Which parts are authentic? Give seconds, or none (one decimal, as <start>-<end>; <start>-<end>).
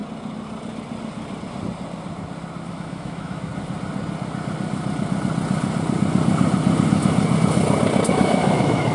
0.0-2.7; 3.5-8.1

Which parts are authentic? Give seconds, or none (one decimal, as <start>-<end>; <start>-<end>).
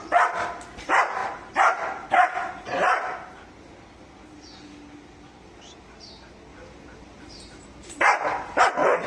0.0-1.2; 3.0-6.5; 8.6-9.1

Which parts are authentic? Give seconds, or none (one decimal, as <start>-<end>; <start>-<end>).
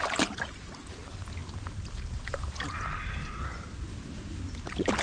0.0-5.0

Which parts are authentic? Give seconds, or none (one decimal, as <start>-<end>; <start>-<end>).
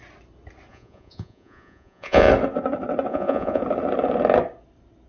0.0-0.7; 2.3-3.1; 3.6-5.1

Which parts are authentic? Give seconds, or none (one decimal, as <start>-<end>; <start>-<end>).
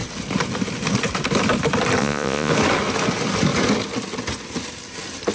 0.0-2.0; 2.5-5.3